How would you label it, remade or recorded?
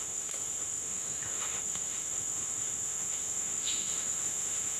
remade